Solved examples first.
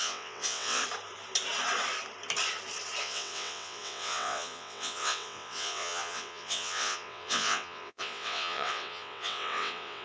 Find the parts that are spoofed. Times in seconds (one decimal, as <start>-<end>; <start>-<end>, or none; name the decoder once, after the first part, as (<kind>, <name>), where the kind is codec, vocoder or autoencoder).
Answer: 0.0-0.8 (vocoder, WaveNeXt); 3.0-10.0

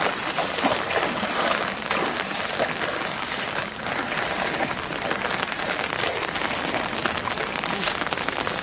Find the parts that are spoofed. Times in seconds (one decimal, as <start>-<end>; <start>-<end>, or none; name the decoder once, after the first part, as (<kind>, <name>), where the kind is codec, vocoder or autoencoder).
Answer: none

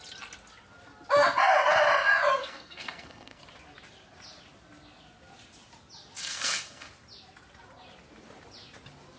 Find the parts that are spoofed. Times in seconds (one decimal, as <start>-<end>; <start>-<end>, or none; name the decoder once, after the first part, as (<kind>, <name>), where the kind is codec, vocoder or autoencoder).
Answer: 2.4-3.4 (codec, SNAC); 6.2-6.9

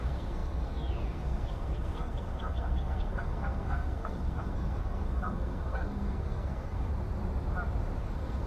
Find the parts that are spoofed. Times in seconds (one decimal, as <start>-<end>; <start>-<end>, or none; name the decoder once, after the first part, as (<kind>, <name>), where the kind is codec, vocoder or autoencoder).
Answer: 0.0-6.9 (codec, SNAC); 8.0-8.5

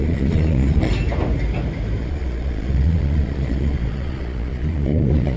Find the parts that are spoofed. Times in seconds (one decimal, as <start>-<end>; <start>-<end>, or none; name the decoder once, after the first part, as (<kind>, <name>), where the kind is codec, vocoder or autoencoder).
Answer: 0.0-0.9 (vocoder, Vocos); 2.0-5.4

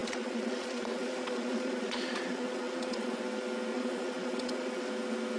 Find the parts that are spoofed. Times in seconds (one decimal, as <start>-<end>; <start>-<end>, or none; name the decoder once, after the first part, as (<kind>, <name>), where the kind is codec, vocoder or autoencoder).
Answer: 0.0-3.2 (vocoder, Vocos); 3.7-4.8